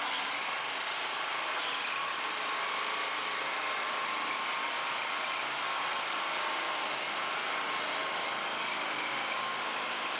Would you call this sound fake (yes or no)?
yes